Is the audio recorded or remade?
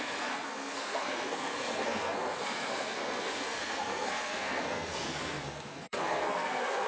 remade